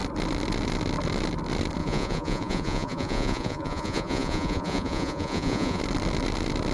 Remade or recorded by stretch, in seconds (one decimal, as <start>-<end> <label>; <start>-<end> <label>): 0.0-1.8 recorded; 1.8-5.8 remade; 5.8-6.7 recorded